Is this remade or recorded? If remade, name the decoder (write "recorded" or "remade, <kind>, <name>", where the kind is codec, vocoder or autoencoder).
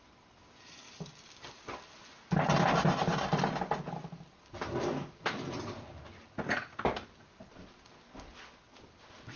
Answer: recorded